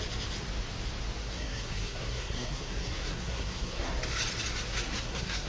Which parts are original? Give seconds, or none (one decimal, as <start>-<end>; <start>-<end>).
0.0-1.2; 3.9-4.7